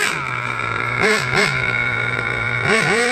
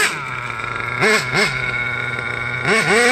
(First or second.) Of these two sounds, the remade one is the first